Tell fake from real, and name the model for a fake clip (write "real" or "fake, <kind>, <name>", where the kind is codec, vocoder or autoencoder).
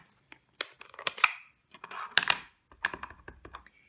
fake, vocoder, BigVGAN v2